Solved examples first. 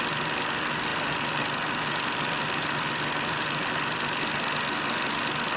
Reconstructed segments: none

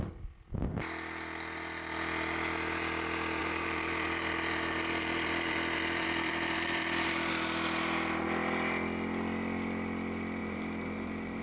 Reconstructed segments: 3.4-7.3 (vocoder, BigVGAN v2); 10.4-11.4

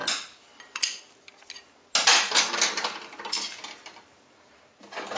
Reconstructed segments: 0.0-1.0 (vocoder, BigVGAN v2)

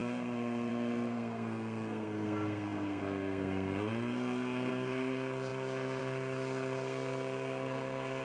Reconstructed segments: 0.0-8.2 (codec, SNAC)

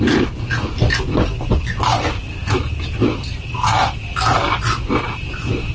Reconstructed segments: none

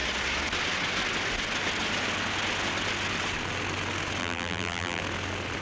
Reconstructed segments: 4.2-5.0 (vocoder, BigVGAN v2)

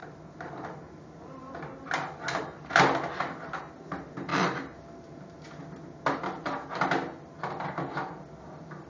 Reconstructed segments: 4.3-5.6 (vocoder, BigVGAN v2)